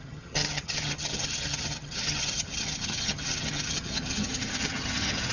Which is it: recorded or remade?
remade